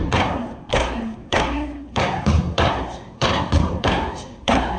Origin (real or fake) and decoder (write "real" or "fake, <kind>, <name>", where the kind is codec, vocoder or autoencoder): fake, codec, SNAC